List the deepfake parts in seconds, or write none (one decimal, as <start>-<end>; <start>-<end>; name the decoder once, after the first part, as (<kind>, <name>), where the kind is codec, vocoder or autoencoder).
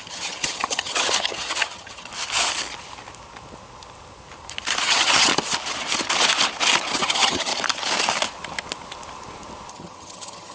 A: 0.0-2.1 (vocoder, HiFi-GAN); 4.8-5.3; 6.9-7.5; 9.7-10.5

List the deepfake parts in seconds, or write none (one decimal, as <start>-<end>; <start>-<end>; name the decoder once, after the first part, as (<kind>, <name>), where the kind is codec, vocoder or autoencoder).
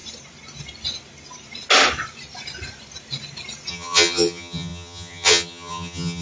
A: 3.7-6.2 (vocoder, HiFi-GAN)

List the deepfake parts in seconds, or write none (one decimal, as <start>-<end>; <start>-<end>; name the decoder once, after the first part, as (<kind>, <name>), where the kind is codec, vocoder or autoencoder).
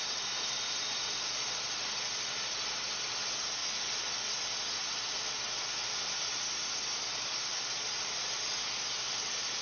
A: none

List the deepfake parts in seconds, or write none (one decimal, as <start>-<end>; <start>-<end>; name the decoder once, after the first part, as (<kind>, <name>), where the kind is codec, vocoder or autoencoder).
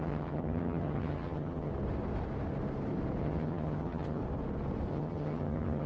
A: 0.0-1.7 (vocoder, HiFi-GAN); 3.2-4.2; 4.9-5.9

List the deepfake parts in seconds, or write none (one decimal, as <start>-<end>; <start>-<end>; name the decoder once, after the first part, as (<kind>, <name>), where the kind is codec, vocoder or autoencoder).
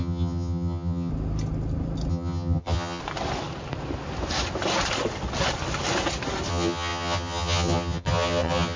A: 0.0-1.1 (vocoder, HiFi-GAN); 2.1-3.0; 6.5-8.8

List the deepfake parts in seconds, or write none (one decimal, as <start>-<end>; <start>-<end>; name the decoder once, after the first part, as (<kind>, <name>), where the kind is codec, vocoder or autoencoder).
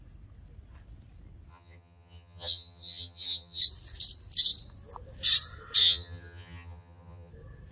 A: 1.5-3.6 (vocoder, HiFi-GAN); 5.8-7.3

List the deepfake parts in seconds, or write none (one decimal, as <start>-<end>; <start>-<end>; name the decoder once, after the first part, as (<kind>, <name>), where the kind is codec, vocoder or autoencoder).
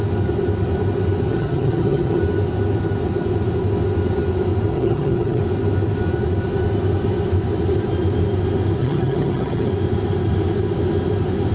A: 1.3-2.2 (vocoder, HiFi-GAN); 4.7-5.4; 8.8-9.7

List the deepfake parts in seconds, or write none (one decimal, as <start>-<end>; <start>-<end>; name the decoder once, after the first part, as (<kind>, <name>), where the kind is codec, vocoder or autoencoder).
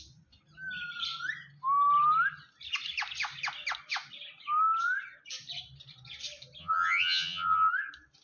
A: 6.6-7.7 (vocoder, HiFi-GAN)